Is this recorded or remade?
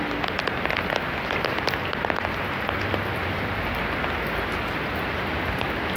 recorded